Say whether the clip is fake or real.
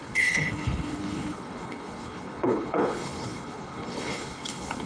fake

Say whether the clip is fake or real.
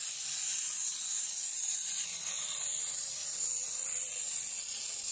real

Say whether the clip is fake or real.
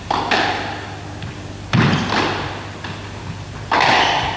real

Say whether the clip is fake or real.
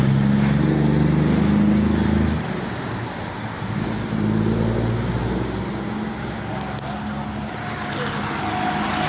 real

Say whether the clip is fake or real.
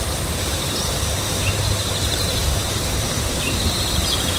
fake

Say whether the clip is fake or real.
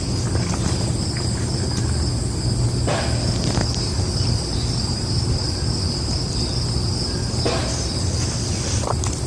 real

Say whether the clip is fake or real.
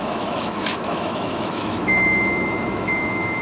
fake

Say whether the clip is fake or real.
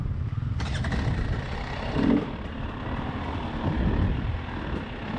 real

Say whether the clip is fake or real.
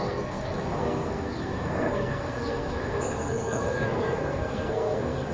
fake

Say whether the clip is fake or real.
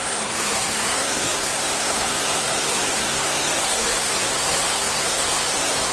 fake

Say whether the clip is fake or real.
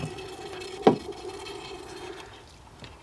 real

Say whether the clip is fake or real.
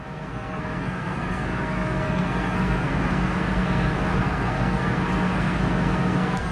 fake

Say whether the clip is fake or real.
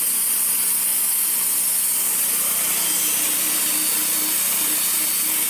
real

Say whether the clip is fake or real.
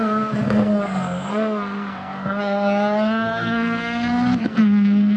fake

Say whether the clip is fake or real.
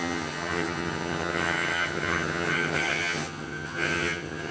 fake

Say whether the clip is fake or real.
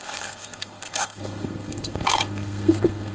fake